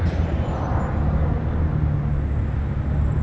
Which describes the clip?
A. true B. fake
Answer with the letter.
A